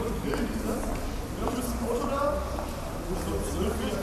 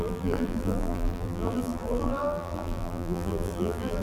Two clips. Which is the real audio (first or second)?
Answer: first